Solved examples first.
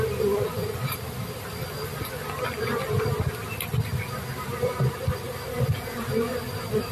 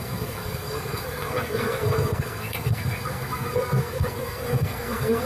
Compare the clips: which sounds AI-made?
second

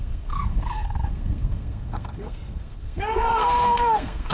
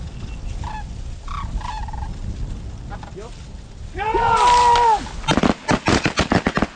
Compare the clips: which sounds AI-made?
first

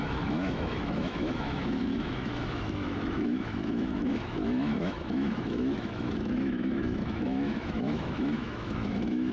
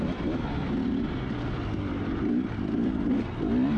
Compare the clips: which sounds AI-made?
first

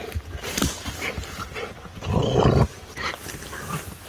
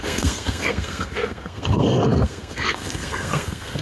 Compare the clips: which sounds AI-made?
second